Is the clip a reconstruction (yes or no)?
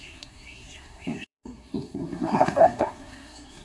yes